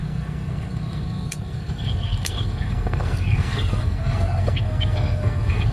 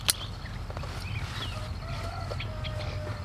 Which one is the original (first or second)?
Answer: second